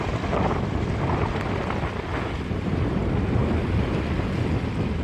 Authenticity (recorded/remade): recorded